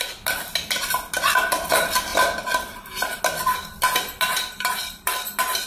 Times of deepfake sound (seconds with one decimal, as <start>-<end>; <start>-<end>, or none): 2.1-3.2; 4.3-5.1